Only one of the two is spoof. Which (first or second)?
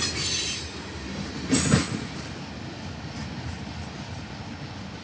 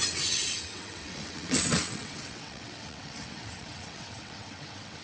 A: second